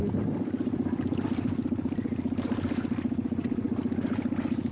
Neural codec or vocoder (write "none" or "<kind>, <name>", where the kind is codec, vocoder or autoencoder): none